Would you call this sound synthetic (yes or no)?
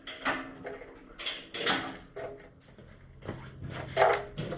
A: no